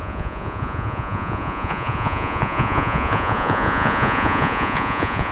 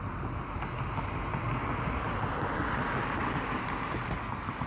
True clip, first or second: second